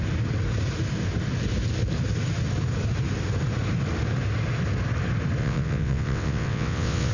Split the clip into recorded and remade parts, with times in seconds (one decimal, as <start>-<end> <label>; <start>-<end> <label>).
0.0-5.4 recorded; 5.4-7.1 remade